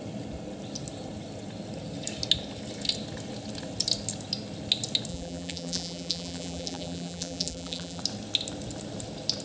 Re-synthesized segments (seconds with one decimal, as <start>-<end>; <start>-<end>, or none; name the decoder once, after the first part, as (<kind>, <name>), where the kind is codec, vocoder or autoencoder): 5.1-8.0 (vocoder, BigVGAN v2)